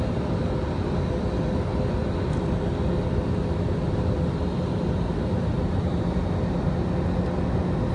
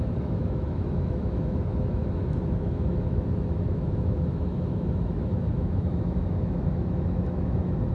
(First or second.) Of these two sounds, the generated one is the second